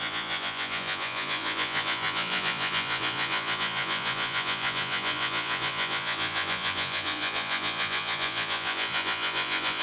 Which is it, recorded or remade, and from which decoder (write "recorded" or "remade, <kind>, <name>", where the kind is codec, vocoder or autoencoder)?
remade, vocoder, Vocos